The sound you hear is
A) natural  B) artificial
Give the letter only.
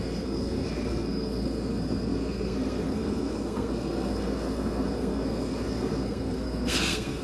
B